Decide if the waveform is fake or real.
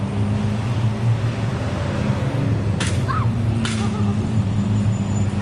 real